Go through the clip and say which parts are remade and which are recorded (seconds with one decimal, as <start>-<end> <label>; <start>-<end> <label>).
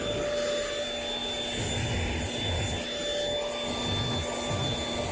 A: 0.0-5.1 recorded